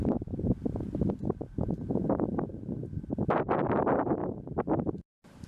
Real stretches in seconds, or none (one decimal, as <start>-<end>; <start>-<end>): 2.8-3.7